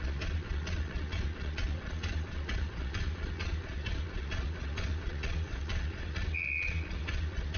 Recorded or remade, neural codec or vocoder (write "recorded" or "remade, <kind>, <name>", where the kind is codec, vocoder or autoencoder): remade, vocoder, Vocos